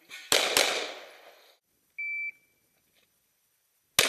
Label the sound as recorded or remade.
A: recorded